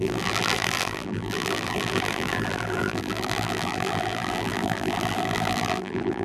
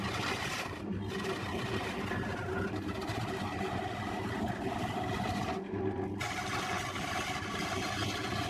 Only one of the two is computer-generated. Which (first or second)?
first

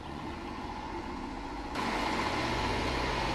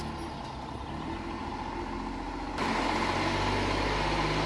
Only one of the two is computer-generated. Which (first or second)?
first